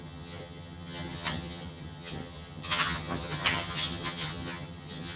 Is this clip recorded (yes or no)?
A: no